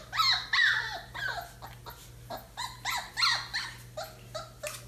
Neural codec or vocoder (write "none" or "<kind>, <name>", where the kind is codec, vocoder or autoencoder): none